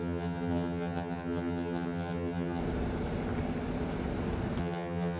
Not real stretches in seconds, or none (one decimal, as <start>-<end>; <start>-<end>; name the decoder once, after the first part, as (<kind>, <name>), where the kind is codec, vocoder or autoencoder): 0.0-2.6 (vocoder, HiFi-GAN); 4.6-5.2